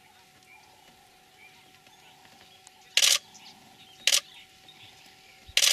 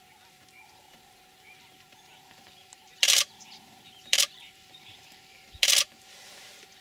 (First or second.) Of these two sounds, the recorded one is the first